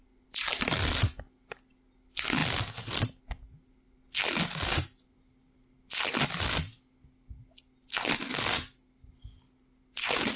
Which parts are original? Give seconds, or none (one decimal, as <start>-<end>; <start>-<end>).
0.0-10.4